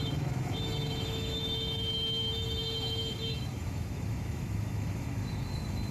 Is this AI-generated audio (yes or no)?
yes